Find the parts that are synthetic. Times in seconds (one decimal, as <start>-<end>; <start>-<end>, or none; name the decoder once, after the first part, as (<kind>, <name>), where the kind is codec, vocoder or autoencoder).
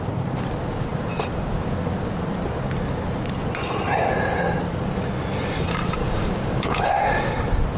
6.0-6.9 (codec, DAC)